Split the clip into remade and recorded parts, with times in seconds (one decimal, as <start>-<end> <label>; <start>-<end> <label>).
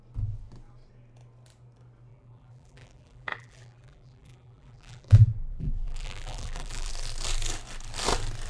0.0-2.1 recorded; 2.1-6.9 remade; 6.9-8.5 recorded